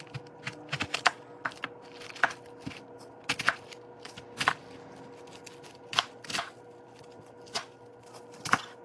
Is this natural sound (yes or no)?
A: yes